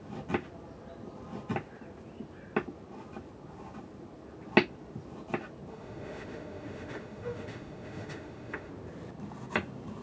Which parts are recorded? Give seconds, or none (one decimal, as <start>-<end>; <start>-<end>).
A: 0.0-5.7; 8.7-10.0